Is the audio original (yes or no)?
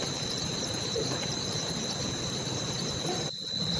no